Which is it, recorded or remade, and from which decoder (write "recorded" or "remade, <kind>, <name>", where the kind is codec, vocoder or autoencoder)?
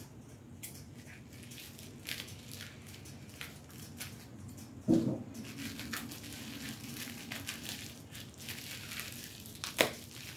recorded